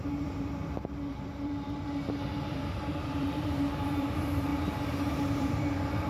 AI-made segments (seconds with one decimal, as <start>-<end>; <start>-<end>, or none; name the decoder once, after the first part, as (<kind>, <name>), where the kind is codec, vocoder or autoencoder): 0.0-0.6 (vocoder, BigVGAN v2); 1.1-6.1